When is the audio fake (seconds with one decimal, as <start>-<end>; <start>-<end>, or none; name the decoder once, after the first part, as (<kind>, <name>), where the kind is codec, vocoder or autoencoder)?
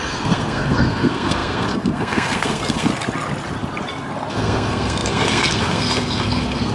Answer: 0.0-2.9 (codec, SNAC); 4.3-6.7